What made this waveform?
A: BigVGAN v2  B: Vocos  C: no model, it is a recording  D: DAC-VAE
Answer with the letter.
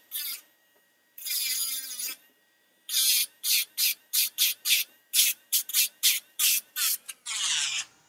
A